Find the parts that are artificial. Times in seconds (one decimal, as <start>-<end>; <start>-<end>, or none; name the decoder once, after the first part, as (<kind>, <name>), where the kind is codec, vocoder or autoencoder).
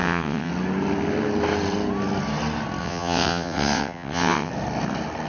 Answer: 0.0-0.5 (vocoder, WaveNeXt); 2.8-4.5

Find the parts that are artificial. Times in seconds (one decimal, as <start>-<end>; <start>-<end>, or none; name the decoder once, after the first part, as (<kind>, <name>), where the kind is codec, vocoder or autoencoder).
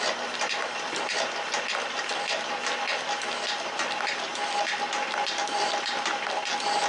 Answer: none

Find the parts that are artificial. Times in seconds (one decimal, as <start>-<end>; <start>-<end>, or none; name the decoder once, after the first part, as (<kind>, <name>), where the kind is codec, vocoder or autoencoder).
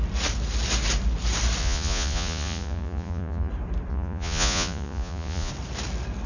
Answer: 1.6-3.5 (vocoder, Vocos); 3.9-5.5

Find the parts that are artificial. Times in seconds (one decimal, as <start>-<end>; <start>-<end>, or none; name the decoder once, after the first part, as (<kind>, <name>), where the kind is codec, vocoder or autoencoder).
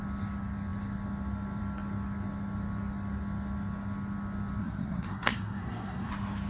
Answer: 4.6-6.1 (codec, SNAC)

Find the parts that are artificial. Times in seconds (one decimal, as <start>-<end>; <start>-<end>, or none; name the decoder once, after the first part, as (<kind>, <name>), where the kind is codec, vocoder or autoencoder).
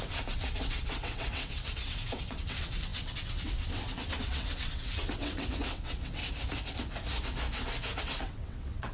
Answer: 0.0-6.2 (vocoder, WaveNeXt); 8.0-8.9